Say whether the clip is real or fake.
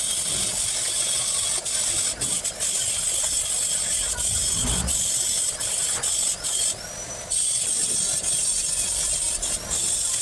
real